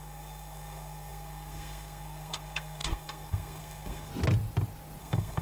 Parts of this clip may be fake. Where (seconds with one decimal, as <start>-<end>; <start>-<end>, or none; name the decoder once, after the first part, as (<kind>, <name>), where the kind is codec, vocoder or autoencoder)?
0.0-4.1 (codec, SNAC); 5.0-5.4